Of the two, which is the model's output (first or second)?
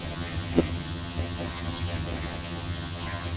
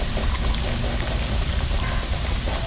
first